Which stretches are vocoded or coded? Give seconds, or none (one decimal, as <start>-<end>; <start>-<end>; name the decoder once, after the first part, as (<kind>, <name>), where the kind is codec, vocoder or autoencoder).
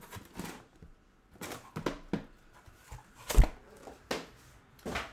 none